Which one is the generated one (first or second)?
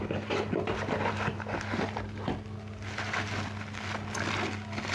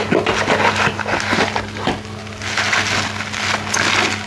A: first